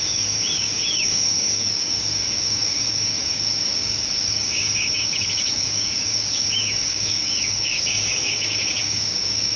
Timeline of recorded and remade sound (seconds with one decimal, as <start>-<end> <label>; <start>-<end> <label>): 0.0-9.6 remade